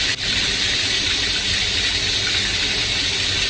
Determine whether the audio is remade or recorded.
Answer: recorded